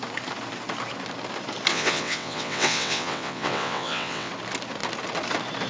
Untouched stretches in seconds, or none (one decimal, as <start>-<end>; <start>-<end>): 0.0-1.7; 4.3-5.7